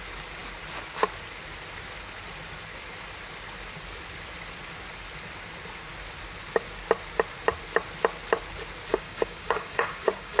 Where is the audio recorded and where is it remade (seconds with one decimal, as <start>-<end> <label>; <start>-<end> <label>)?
0.0-8.9 recorded; 8.9-10.4 remade